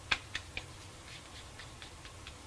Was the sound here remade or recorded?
recorded